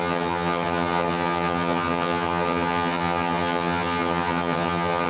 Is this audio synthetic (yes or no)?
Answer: yes